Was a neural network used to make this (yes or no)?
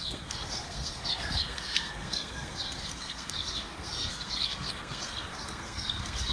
yes